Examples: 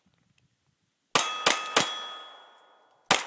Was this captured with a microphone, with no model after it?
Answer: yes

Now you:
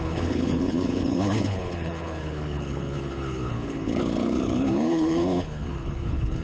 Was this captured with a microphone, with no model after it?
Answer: no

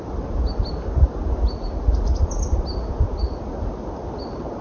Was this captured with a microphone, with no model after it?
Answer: yes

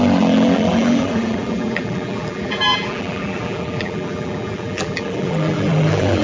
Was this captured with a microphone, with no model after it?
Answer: no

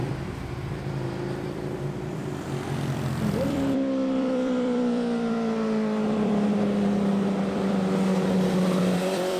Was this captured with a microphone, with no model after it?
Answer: no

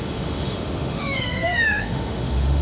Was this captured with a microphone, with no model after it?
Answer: no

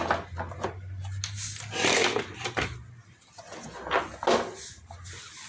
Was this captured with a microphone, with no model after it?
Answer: yes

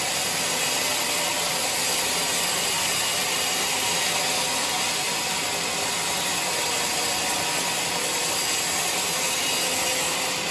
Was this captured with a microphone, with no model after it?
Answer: yes